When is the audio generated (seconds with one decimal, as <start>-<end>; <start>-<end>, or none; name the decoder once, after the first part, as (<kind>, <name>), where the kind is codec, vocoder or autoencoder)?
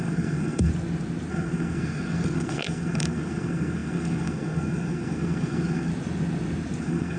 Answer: 0.0-0.7 (codec, SNAC); 1.3-5.9; 6.8-7.2